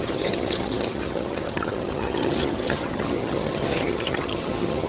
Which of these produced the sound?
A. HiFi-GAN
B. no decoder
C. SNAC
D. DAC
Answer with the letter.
A